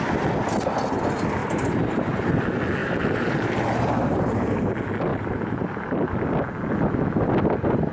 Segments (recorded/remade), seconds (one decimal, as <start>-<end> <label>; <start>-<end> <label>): 0.0-1.4 recorded; 1.4-2.3 remade; 2.3-2.8 recorded; 2.8-4.6 remade; 4.6-5.1 recorded; 5.1-6.2 remade; 6.2-7.9 recorded